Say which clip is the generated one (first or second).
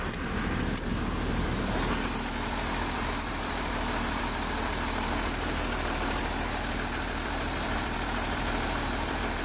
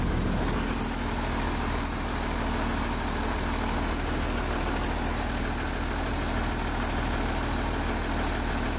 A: first